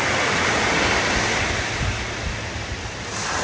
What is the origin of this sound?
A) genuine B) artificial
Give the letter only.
A